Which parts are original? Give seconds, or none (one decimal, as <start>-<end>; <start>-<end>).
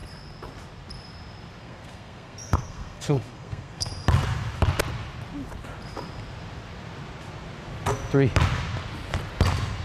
0.0-1.6; 3.9-9.8